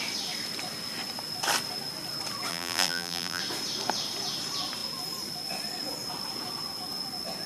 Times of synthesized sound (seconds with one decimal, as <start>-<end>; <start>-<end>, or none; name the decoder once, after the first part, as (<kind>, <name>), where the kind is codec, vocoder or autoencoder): 2.5-3.4 (vocoder, BigVGAN v2)